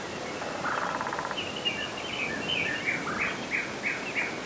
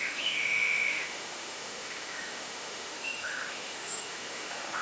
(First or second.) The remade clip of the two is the second